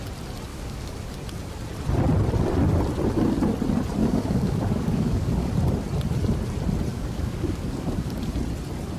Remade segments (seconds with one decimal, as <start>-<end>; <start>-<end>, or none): 0.5-1.1; 4.0-5.5; 6.9-8.1